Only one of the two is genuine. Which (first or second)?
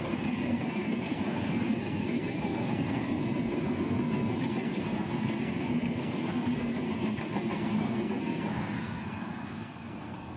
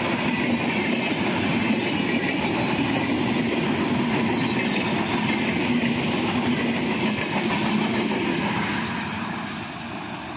second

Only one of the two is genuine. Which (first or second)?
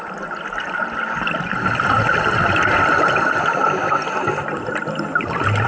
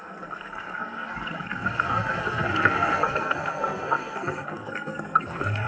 first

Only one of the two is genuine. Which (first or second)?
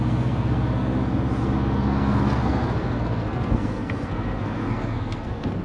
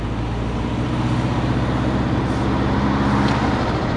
second